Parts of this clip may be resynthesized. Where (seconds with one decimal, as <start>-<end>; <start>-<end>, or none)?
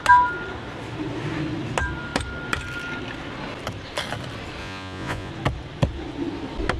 4.6-5.3